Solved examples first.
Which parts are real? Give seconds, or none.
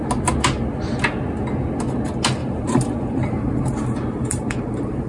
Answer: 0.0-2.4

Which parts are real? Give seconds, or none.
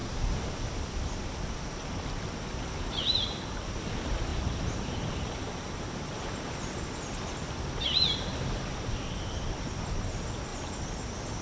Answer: 0.0-4.3; 5.7-11.4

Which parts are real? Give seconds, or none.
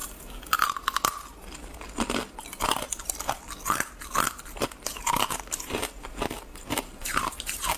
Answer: 0.0-4.6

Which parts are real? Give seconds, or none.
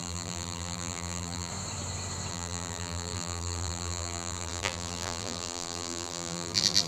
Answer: 1.5-2.3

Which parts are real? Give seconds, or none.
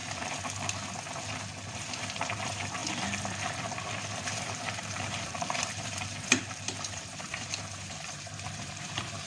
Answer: 0.0-1.7; 2.8-4.0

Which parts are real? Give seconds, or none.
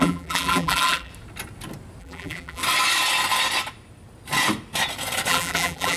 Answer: 1.1-2.0; 2.6-5.3